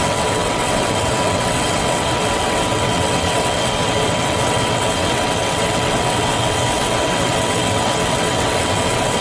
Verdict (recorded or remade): remade